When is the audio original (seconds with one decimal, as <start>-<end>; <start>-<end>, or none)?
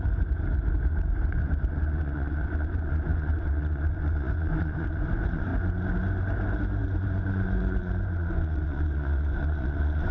5.5-6.8